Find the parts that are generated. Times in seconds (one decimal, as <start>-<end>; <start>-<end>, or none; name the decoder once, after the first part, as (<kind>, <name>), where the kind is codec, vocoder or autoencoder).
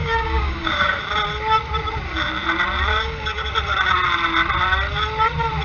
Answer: 0.0-1.0 (codec, DAC); 2.9-3.5